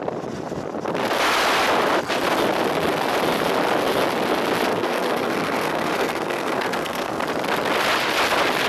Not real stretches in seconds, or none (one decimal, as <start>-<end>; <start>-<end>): 4.7-7.2